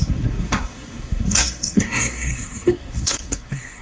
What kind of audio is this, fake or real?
fake